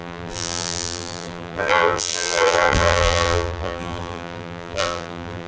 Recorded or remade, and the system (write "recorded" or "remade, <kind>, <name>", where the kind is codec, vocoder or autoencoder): remade, vocoder, BigVGAN v2